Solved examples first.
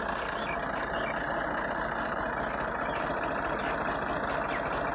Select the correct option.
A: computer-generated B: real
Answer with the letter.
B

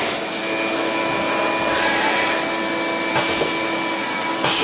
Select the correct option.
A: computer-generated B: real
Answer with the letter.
B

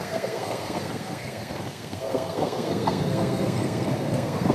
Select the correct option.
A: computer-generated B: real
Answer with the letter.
A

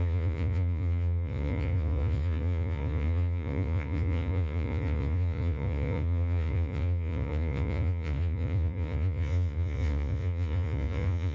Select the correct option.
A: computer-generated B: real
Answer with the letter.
A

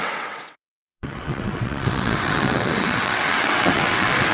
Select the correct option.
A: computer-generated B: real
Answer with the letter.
A